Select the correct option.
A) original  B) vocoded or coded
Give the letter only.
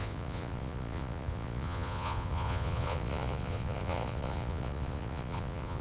B